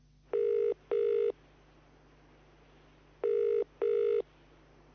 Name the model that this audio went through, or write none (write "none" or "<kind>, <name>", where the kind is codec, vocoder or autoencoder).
none